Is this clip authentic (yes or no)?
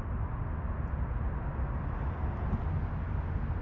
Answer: yes